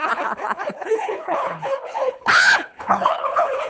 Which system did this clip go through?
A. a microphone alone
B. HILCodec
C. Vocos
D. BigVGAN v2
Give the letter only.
B